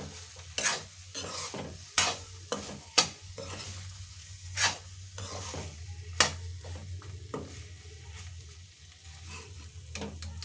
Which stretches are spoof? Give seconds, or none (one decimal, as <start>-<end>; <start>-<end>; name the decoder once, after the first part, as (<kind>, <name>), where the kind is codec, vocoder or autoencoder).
0.7-5.4 (vocoder, Vocos)